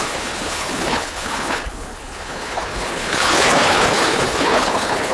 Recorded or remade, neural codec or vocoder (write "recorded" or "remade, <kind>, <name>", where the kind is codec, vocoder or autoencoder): remade, codec, HILCodec